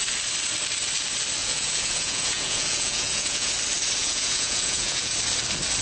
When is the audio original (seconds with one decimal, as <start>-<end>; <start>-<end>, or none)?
0.0-1.4; 3.5-4.0; 5.1-5.8